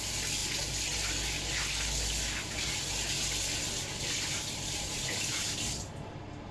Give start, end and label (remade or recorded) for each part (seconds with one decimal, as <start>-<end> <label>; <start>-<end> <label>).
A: 0.0-6.5 recorded